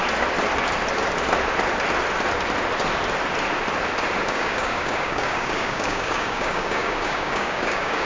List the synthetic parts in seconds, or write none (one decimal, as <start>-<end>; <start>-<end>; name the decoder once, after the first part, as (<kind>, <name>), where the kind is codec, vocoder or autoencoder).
4.2-8.0 (codec, DAC)